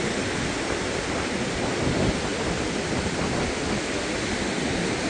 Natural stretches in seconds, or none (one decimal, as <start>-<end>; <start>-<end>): 0.0-2.3; 3.1-5.1